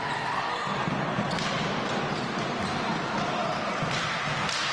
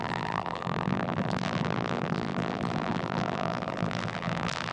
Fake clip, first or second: second